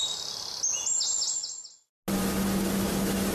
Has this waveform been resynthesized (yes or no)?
no